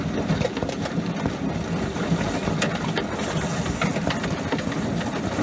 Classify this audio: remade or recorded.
recorded